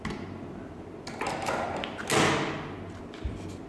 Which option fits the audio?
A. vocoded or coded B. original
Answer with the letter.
B